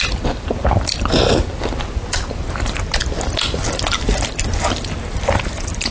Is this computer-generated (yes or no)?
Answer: no